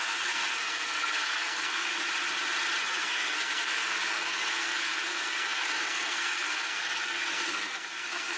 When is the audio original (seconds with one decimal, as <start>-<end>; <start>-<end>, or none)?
1.9-2.8